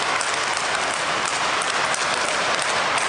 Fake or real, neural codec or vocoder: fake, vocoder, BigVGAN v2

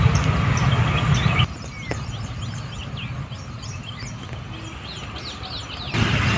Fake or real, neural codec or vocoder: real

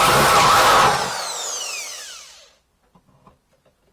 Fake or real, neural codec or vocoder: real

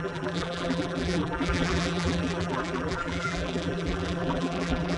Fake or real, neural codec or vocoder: fake, vocoder, BigVGAN v2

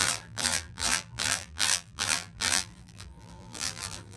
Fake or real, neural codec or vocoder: fake, vocoder, BigVGAN v2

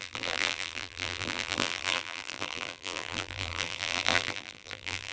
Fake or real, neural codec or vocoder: fake, vocoder, BigVGAN v2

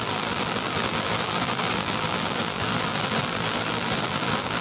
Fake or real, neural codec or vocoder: fake, vocoder, BigVGAN v2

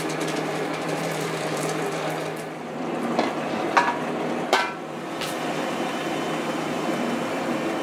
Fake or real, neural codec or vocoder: fake, vocoder, BigVGAN v2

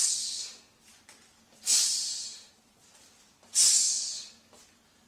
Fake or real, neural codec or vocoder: real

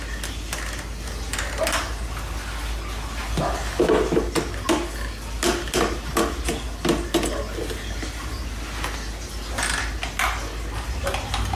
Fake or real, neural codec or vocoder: real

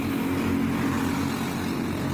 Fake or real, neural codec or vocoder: real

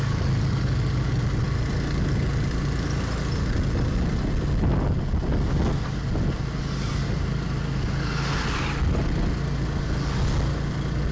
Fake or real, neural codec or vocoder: real